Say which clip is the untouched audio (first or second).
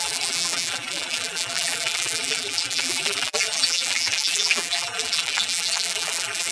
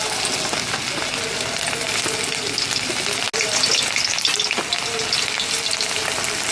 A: second